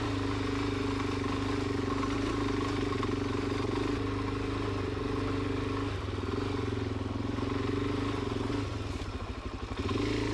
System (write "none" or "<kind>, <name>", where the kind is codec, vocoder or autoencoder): none